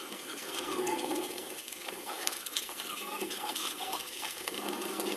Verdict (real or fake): fake